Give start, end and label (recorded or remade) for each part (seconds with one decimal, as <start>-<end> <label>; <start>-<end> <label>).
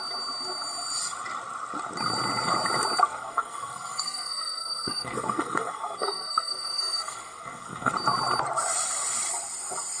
0.0-3.1 recorded; 3.1-7.9 remade; 7.9-10.0 recorded